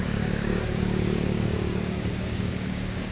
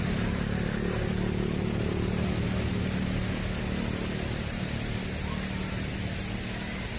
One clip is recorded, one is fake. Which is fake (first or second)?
first